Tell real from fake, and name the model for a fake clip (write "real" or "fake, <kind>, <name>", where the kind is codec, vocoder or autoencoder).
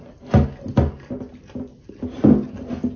real